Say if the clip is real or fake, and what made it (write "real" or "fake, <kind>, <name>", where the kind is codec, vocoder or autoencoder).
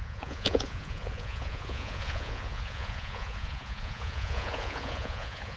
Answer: fake, vocoder, Vocos